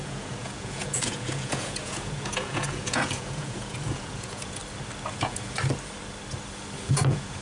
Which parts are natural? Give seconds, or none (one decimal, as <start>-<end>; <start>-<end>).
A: 4.6-5.1; 5.6-6.8